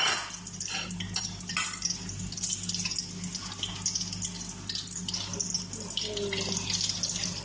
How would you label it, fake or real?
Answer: real